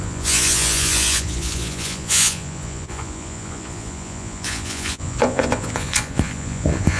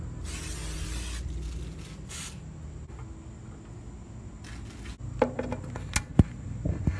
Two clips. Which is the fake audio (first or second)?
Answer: first